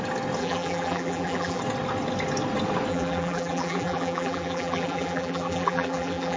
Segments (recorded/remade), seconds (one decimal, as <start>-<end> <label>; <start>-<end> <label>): 0.0-0.4 recorded; 0.4-1.6 remade; 1.6-2.9 recorded; 2.9-6.4 remade